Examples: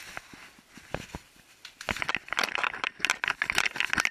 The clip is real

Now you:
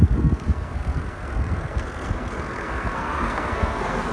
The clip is fake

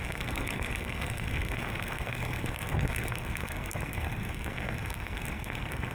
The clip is fake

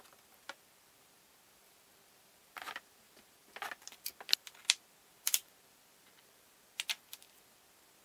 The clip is fake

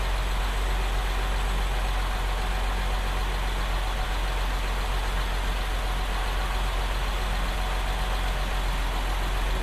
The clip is real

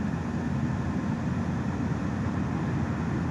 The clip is real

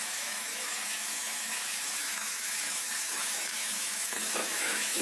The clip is fake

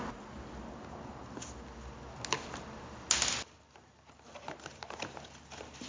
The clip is real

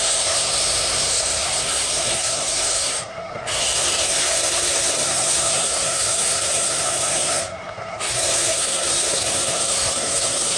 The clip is fake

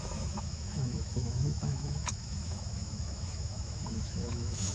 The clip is fake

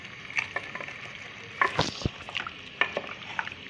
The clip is real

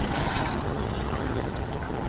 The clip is fake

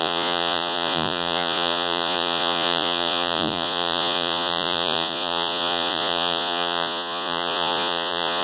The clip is fake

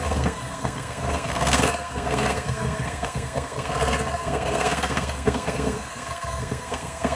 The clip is fake